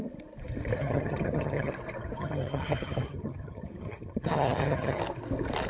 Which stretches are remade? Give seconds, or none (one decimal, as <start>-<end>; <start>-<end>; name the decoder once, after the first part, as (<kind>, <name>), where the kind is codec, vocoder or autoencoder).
0.8-1.7 (vocoder, HiFi-GAN); 2.2-5.0